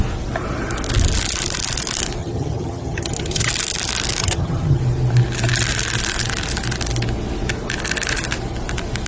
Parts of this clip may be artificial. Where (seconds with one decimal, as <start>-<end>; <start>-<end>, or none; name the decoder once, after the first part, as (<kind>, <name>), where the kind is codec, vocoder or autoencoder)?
2.2-3.5 (vocoder, HiFi-GAN); 4.2-4.8